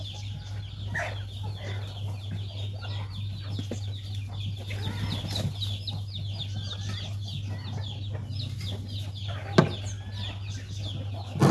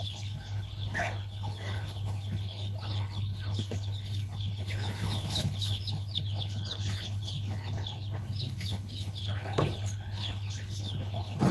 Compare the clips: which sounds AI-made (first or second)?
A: second